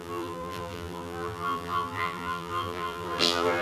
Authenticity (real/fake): fake